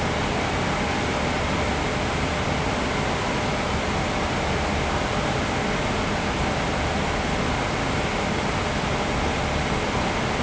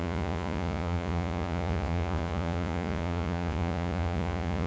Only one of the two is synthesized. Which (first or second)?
second